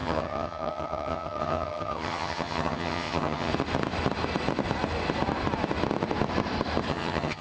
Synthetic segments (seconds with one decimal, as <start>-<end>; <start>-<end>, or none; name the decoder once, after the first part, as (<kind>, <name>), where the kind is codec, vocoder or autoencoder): 0.0-3.5 (vocoder, HiFi-GAN); 6.9-7.4